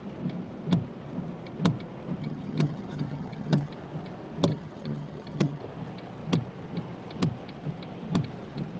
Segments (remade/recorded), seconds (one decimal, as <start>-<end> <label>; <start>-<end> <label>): 0.0-2.2 recorded; 2.2-3.7 remade; 3.7-4.5 recorded; 4.5-5.6 remade; 5.6-8.8 recorded